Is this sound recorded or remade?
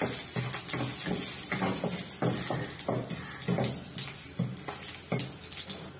recorded